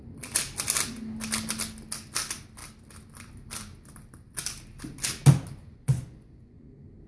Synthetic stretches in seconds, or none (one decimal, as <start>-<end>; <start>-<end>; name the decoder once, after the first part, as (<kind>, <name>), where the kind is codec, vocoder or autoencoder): 5.6-6.6 (vocoder, Vocos)